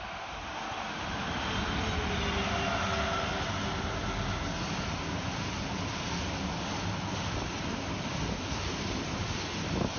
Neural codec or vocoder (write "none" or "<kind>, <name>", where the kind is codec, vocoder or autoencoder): none